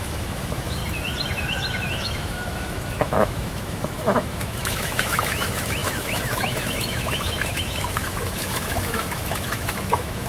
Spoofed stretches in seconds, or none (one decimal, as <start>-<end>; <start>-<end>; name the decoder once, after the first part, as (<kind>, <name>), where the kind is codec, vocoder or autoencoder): 0.0-0.8 (autoencoder, DAC-VAE); 1.9-10.3